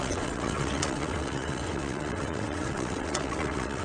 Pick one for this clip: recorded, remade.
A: remade